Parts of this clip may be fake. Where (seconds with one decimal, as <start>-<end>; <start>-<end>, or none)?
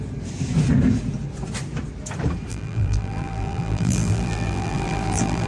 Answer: 2.5-5.5